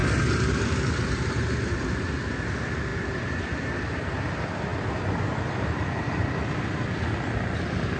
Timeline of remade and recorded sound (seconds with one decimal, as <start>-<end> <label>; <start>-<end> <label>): 0.0-2.2 remade; 2.2-2.9 recorded; 2.9-3.6 remade; 3.6-8.0 recorded